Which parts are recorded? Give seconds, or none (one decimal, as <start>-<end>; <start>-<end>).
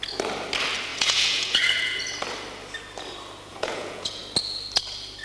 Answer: 0.0-0.9; 2.0-3.5; 4.2-5.2